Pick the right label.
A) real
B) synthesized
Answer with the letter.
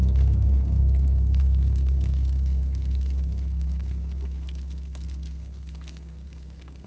B